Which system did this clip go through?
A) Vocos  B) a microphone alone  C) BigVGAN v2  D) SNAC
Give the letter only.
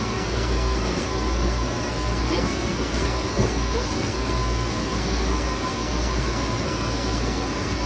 D